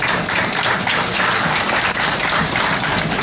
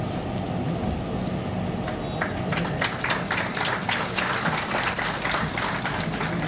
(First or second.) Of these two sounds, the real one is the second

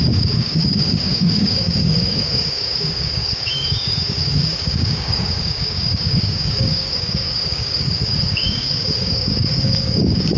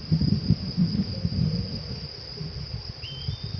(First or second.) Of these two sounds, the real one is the second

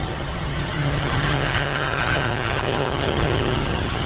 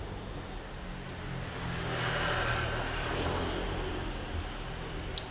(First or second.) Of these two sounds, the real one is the second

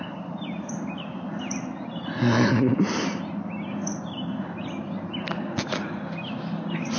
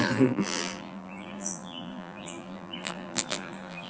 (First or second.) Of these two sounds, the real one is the first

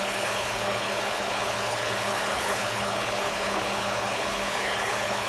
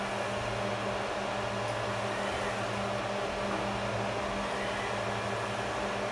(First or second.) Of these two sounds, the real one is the second